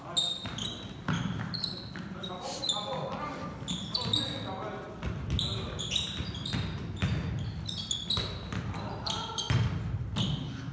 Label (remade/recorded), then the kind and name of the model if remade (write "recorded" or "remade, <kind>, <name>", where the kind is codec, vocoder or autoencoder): recorded